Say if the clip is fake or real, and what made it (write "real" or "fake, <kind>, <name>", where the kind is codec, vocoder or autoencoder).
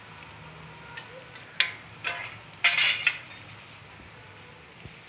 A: real